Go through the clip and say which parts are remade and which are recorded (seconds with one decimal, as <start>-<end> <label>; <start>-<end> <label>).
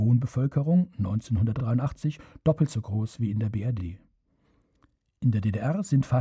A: 0.0-6.2 recorded